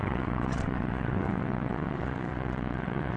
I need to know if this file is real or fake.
fake